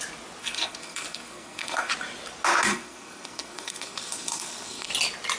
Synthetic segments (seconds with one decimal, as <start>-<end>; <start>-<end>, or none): 0.4-1.9; 2.7-4.9